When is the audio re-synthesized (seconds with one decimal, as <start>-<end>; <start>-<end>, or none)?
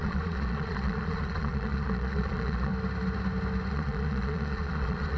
0.0-2.7; 3.7-5.2